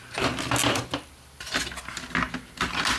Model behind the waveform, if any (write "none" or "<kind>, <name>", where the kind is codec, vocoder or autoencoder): none